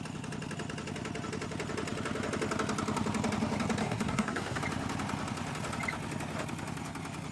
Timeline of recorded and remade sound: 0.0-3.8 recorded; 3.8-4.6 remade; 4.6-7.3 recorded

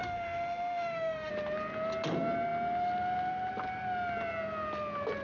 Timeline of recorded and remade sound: 0.0-1.3 remade; 1.3-5.2 recorded

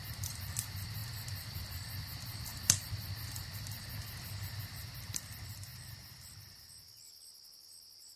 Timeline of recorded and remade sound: 0.0-8.2 recorded